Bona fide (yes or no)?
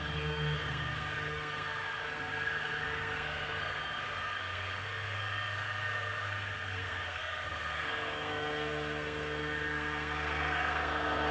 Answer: no